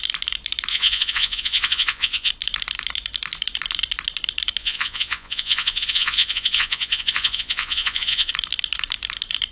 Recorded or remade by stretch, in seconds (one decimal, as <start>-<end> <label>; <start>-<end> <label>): 0.0-0.7 recorded; 0.7-2.3 remade; 2.3-4.6 recorded; 4.6-8.3 remade; 8.3-9.5 recorded

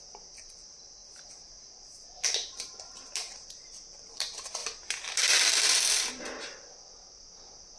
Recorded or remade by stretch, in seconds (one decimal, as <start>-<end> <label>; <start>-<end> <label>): 0.0-4.6 remade; 4.6-6.1 recorded; 6.1-7.8 remade

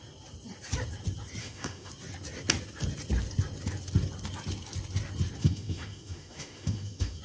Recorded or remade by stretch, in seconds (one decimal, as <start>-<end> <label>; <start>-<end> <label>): 0.0-1.4 recorded; 1.4-1.9 remade; 1.9-5.4 recorded; 5.4-7.2 remade

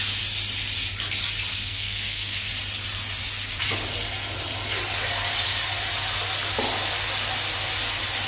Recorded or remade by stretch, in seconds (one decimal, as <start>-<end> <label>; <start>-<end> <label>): 0.0-1.5 recorded; 1.5-2.5 remade; 2.5-8.3 recorded

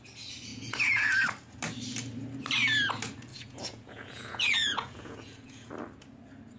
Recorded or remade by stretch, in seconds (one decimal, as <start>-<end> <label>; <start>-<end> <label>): 0.0-0.5 recorded; 0.5-1.1 remade; 1.1-3.3 recorded; 3.3-5.7 remade; 5.7-6.6 recorded

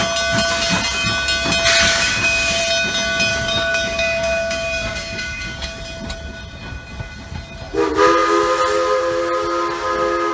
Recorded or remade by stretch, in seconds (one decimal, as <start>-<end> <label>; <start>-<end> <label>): 0.0-1.9 recorded; 1.9-2.6 remade; 2.6-3.3 recorded; 3.3-5.8 remade; 5.8-10.3 recorded